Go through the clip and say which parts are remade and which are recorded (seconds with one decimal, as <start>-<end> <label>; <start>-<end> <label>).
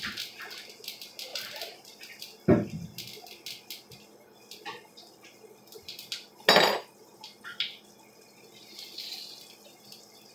0.0-1.3 recorded; 1.3-2.2 remade; 2.2-10.3 recorded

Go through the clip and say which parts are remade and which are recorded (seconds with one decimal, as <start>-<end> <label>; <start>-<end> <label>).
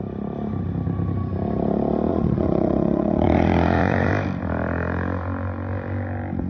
0.0-2.1 recorded; 2.1-4.1 remade; 4.1-6.5 recorded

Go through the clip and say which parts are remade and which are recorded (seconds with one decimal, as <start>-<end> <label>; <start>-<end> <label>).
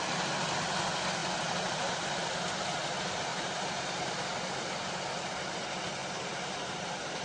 0.0-1.2 recorded; 1.2-2.4 remade; 2.4-3.3 recorded; 3.3-4.1 remade; 4.1-6.0 recorded; 6.0-7.2 remade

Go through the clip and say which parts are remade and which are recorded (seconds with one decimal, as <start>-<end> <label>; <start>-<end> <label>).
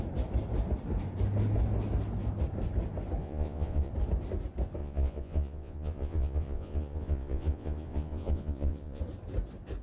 0.0-3.2 recorded; 3.2-3.9 remade; 3.9-4.8 recorded; 4.8-9.0 remade; 9.0-9.8 recorded